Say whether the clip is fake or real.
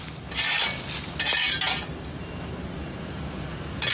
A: real